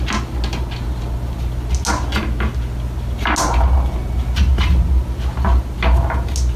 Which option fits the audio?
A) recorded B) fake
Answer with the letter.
A